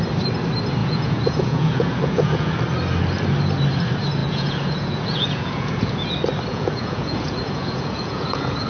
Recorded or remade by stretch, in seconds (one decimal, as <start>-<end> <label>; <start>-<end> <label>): 0.0-0.8 recorded; 0.8-2.6 remade; 2.6-4.2 recorded; 4.2-6.1 remade; 6.1-6.5 recorded; 6.5-8.7 remade